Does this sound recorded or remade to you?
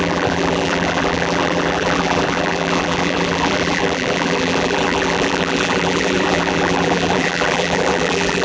remade